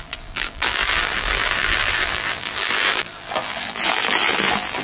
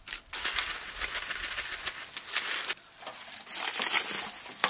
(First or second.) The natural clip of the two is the second